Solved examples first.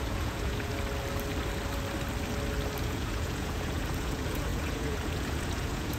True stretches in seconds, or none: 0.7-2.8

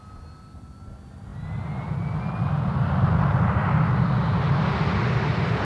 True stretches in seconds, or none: 0.0-5.6

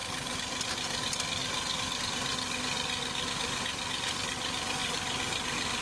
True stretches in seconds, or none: 0.0-5.8

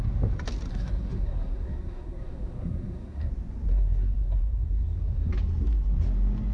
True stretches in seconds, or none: 0.0-0.7; 3.3-3.7; 5.3-6.5

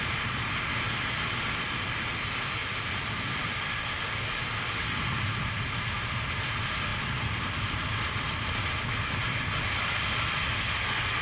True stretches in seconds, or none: 0.0-2.6; 4.4-11.2

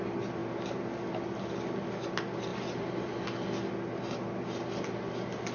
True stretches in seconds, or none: 0.0-0.4; 1.2-2.5; 3.1-5.5

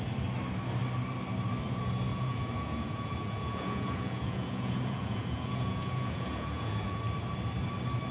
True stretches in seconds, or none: 0.0-2.1; 7.0-8.1

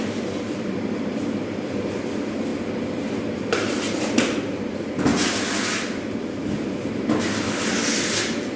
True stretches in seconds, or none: 0.0-8.6